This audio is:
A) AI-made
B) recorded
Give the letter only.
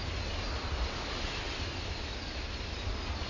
B